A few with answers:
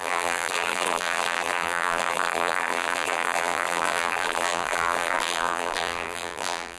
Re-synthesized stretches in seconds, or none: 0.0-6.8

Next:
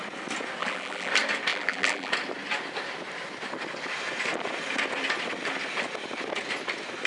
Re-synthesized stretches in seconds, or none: 0.6-1.1; 1.5-2.1

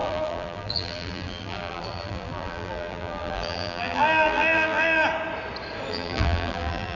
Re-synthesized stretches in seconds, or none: 0.0-5.0; 5.9-7.0